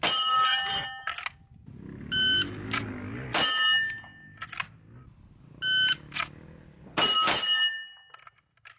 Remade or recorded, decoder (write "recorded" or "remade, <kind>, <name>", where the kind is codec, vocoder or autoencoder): recorded